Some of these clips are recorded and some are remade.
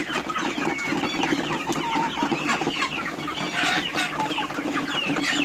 remade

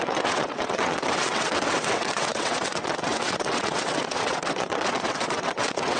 remade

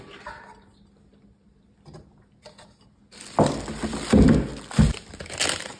recorded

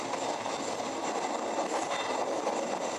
recorded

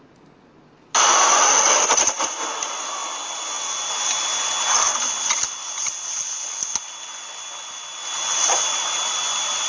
recorded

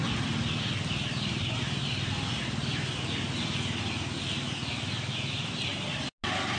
recorded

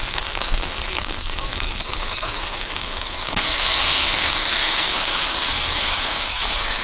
remade